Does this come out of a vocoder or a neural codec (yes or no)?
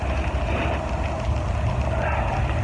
no